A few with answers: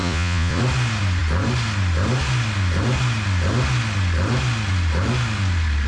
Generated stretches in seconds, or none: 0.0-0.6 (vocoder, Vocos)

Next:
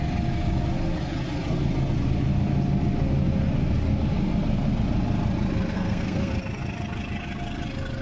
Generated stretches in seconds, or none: 5.7-6.3 (codec, SNAC)

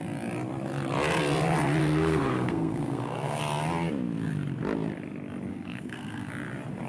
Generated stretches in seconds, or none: 1.8-3.4 (codec, SNAC); 5.5-6.3

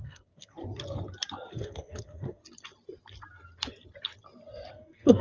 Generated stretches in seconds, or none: 0.0-0.6 (codec, SNAC); 1.5-2.4; 4.7-5.2

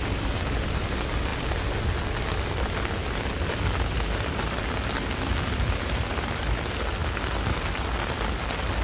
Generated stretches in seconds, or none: none

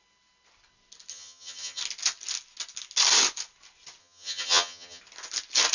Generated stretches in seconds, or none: 1.1-1.8 (vocoder, HiFi-GAN); 4.0-5.0